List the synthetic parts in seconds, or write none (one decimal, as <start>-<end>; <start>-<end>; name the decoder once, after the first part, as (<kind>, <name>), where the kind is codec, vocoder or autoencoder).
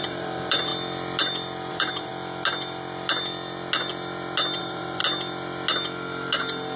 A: 0.0-0.7 (vocoder, BigVGAN v2); 1.7-2.1; 4.6-5.0